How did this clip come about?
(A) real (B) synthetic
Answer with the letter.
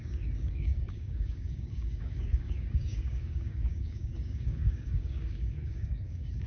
B